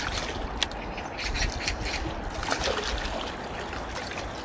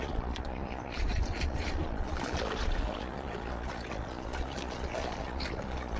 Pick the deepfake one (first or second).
second